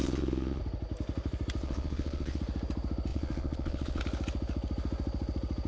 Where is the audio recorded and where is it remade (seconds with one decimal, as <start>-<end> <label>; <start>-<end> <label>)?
0.0-0.6 remade; 0.6-1.6 recorded; 1.6-2.4 remade; 2.4-3.1 recorded; 3.1-4.0 remade; 4.0-5.7 recorded